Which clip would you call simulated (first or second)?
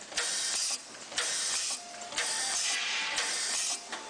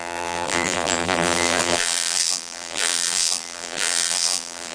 second